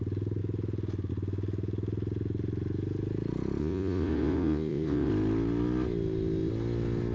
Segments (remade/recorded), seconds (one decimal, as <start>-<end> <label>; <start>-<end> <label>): 0.0-3.6 recorded; 3.6-5.1 remade; 5.1-7.1 recorded